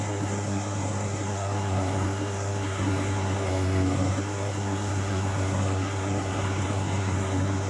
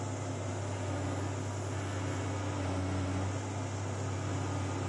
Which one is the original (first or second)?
second